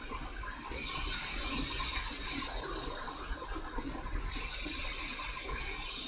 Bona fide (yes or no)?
yes